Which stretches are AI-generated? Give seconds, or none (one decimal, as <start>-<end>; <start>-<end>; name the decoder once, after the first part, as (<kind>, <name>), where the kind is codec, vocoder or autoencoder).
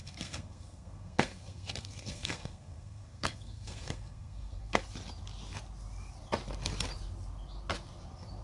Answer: 0.0-4.8 (codec, SNAC)